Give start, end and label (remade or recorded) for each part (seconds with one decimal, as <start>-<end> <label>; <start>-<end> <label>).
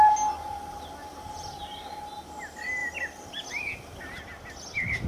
0.0-5.1 recorded